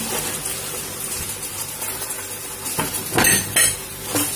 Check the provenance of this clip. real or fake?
real